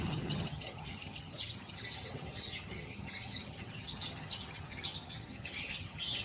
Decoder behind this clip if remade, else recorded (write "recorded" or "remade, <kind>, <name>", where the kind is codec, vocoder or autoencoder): remade, vocoder, HiFi-GAN